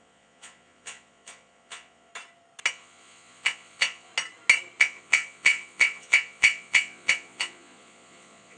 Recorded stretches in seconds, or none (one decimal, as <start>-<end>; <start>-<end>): 2.1-2.7; 4.1-4.8